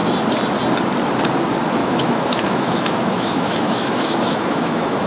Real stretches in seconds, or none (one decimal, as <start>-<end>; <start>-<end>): 0.0-1.8